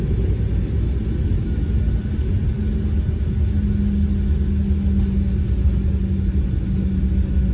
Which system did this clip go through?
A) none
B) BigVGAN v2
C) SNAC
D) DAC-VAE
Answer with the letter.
A